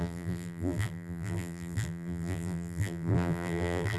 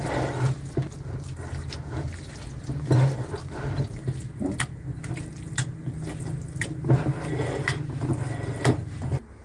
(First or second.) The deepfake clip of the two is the first